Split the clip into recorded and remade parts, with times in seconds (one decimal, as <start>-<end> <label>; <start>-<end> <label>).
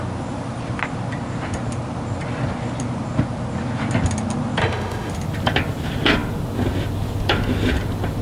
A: 0.0-4.6 recorded; 4.6-5.1 remade; 5.1-8.2 recorded